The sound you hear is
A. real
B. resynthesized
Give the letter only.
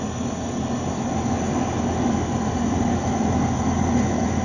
A